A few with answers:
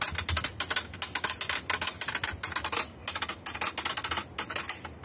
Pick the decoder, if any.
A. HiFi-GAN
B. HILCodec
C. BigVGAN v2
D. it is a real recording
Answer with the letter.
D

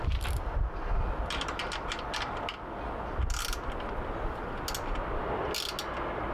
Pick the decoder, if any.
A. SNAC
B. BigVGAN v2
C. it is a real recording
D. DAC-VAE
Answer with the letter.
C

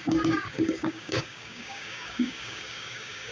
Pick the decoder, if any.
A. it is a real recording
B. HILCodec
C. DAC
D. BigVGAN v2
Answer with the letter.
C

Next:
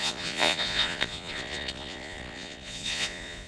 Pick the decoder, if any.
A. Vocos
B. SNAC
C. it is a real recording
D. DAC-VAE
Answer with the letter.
A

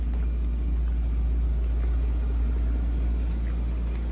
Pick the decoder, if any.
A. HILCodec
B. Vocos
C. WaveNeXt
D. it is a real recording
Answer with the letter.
D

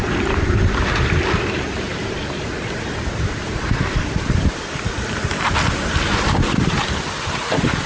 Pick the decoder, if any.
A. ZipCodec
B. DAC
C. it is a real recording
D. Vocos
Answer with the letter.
C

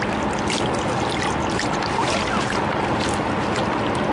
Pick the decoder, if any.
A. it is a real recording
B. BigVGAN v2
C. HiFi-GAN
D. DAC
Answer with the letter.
A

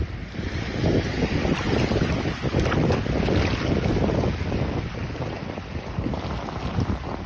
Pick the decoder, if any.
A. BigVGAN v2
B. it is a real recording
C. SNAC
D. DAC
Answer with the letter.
B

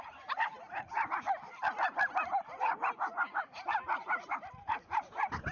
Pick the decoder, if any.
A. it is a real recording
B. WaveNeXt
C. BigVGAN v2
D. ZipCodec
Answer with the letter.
A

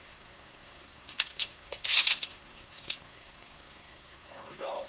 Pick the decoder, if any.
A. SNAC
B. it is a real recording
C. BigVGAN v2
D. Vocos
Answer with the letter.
A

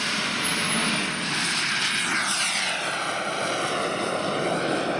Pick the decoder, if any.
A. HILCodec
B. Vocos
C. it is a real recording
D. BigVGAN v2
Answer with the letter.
C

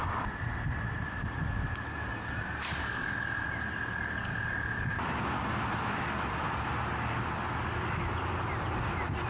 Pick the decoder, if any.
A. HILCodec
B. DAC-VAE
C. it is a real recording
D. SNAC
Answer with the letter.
C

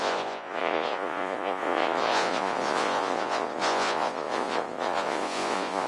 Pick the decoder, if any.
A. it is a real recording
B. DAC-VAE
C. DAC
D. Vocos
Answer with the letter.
D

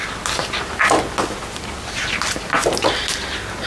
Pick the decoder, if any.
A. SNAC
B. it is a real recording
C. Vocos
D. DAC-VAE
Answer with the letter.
B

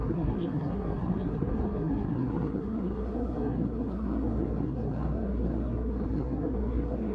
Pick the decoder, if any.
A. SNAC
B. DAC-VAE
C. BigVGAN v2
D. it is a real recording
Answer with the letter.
A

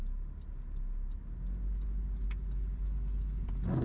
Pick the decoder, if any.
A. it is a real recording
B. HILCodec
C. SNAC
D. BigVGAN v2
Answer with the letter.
A